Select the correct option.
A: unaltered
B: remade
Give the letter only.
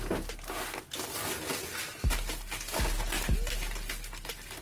A